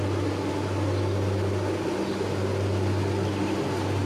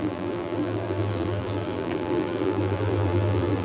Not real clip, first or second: second